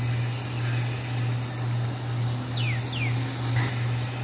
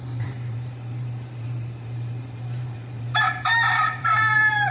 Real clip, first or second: first